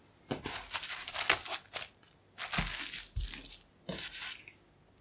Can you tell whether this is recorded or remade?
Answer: recorded